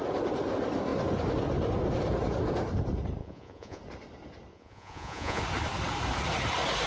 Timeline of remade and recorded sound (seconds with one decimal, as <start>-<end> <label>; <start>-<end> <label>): 0.0-3.2 recorded; 3.2-3.8 remade; 3.8-4.5 recorded; 4.5-5.4 remade; 5.4-6.9 recorded